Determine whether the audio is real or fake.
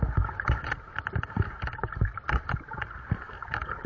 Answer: fake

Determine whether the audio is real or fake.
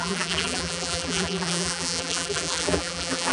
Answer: fake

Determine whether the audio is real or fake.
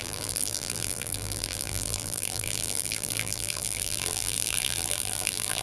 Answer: fake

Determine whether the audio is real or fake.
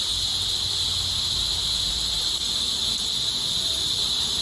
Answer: real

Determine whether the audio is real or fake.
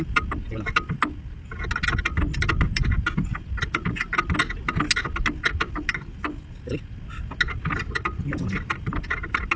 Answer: real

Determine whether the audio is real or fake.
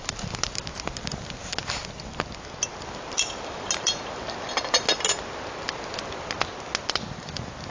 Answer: real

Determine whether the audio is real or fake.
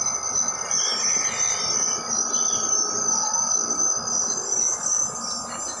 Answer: real